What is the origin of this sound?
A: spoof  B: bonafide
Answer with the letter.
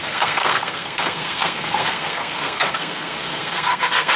A